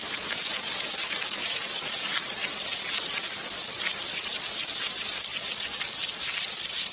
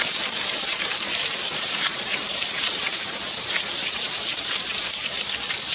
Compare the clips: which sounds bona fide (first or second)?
first